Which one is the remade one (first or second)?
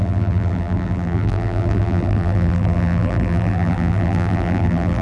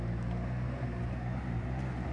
first